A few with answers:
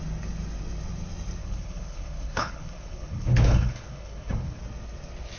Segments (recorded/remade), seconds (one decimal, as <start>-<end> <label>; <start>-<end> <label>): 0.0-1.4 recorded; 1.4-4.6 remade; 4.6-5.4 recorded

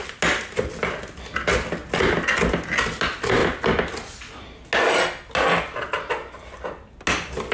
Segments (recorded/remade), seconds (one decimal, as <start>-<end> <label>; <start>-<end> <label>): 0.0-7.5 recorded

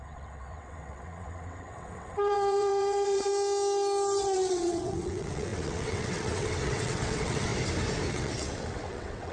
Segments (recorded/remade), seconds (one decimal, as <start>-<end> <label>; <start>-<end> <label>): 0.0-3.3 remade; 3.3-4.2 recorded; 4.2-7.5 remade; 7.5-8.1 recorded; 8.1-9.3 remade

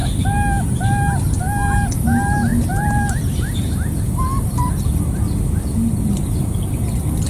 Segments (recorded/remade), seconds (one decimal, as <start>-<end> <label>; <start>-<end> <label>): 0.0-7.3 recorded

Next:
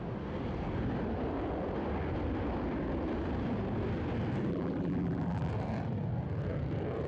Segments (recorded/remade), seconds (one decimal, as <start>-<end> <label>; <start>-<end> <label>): 0.0-4.5 recorded; 4.5-5.5 remade; 5.5-7.1 recorded

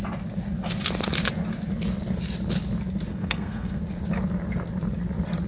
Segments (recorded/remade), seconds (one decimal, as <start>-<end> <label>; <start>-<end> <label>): 0.0-3.1 recorded; 3.1-3.8 remade; 3.8-5.5 recorded

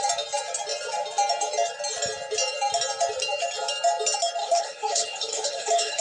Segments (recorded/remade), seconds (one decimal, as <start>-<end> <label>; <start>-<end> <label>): 0.0-4.4 recorded; 4.4-6.0 remade

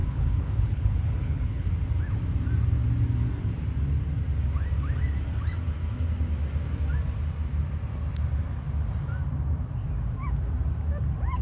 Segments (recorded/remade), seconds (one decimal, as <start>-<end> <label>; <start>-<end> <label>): 0.0-1.7 remade; 1.7-11.4 recorded